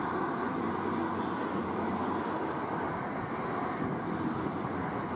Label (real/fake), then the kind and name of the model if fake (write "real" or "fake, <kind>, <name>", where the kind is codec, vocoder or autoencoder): real